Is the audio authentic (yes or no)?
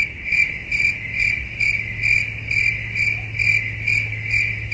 yes